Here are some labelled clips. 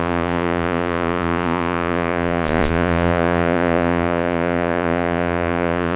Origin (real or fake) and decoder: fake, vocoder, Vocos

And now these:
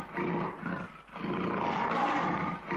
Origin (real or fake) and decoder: real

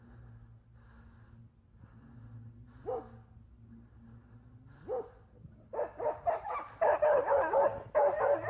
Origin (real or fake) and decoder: real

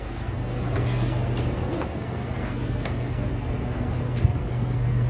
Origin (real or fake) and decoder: fake, codec, SNAC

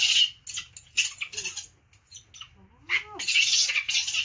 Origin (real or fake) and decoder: real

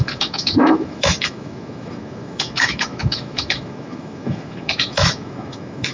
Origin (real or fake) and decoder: fake, autoencoder, DAC-VAE